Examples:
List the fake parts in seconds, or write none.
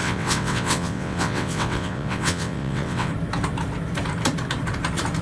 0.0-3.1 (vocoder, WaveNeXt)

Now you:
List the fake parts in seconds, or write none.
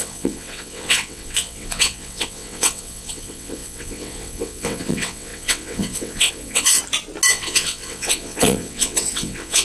0.0-6.8 (vocoder, WaveNeXt); 7.3-9.6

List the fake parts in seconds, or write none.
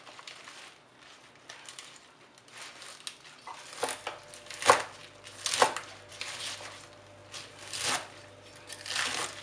none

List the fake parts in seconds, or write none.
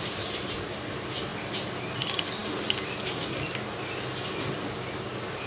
none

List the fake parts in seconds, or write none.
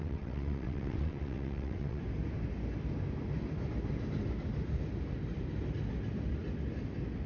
0.0-2.0 (vocoder, WaveNeXt)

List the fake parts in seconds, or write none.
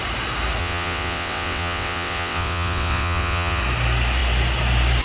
0.6-3.6 (vocoder, WaveNeXt)